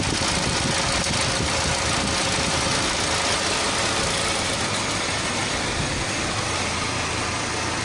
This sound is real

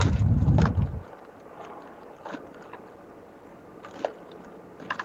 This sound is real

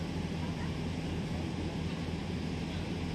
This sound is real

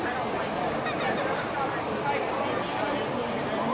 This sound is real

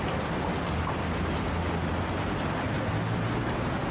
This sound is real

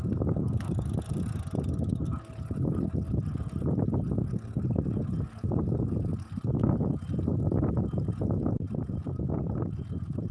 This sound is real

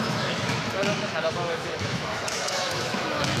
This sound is fake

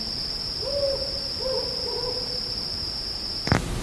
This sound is real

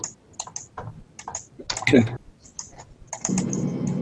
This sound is real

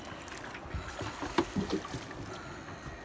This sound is real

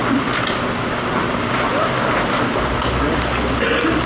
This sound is real